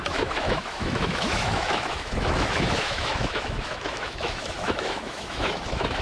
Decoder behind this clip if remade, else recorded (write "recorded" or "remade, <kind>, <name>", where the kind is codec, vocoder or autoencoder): remade, autoencoder, DAC-VAE